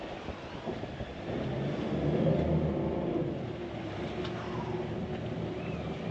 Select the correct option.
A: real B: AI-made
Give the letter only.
A